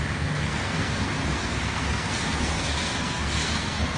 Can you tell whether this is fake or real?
fake